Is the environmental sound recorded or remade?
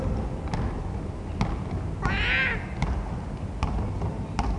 recorded